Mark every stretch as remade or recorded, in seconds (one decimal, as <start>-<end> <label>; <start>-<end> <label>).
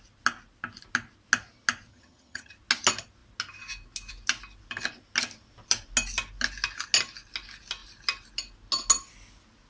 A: 0.0-1.9 recorded; 1.9-2.5 remade; 2.5-9.7 recorded